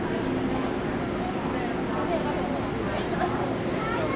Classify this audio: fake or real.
real